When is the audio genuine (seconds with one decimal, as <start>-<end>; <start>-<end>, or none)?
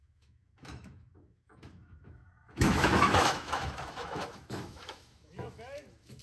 none